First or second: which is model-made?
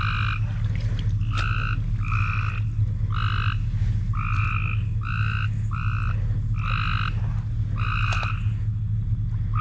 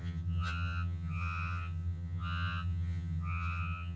second